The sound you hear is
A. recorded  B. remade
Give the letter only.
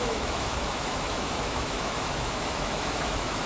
B